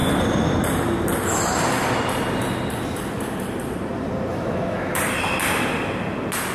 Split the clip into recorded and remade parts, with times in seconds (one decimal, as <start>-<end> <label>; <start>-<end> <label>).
0.0-4.3 recorded; 4.3-5.0 remade; 5.0-6.5 recorded